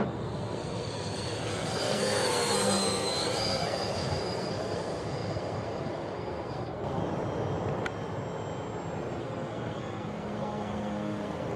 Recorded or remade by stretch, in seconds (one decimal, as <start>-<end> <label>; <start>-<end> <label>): 0.0-7.0 remade; 7.0-9.2 recorded; 9.2-11.6 remade